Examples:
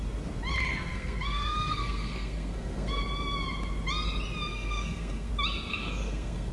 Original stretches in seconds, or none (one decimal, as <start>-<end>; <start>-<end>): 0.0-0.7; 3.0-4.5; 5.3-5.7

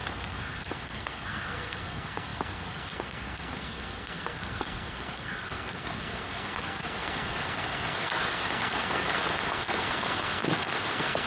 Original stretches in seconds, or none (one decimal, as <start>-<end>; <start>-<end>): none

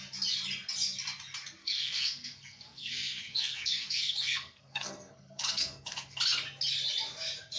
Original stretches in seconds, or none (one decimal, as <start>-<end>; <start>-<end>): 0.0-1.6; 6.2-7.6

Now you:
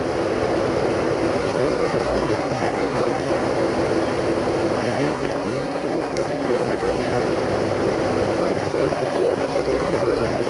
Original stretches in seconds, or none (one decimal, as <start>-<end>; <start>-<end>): 0.0-1.4; 3.3-4.8; 7.2-8.4

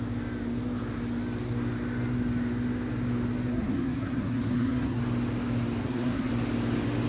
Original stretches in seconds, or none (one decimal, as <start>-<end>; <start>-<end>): 0.0-3.5; 5.0-5.8; 6.3-7.1

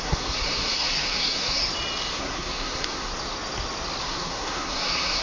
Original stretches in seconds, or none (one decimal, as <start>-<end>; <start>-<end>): 1.6-2.1; 3.1-4.0